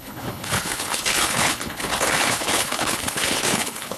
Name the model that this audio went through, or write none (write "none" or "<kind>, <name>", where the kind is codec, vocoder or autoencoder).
codec, HILCodec